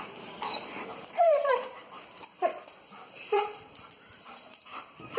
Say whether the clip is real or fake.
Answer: fake